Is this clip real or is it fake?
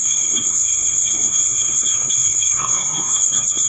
fake